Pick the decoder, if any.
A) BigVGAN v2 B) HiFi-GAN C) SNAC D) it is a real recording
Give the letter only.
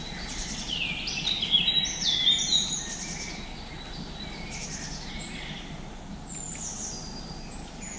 D